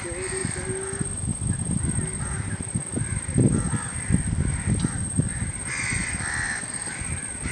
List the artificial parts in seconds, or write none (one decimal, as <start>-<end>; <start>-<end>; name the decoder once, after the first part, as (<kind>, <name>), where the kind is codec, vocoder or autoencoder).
none